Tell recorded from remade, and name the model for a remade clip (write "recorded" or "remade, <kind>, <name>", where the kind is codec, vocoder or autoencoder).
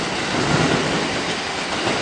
recorded